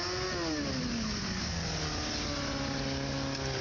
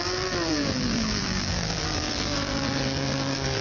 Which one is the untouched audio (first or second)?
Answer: first